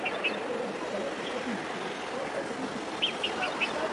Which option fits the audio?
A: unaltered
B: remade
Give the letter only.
A